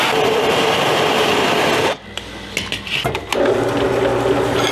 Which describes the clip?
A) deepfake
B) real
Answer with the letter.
B